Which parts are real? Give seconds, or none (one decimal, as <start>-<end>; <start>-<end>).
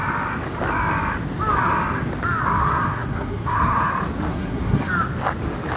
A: 0.0-2.6; 3.9-4.3; 4.9-5.8